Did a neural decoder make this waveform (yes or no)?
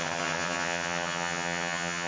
yes